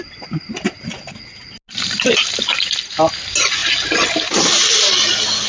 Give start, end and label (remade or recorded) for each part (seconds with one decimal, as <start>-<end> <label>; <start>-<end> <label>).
0.0-5.5 recorded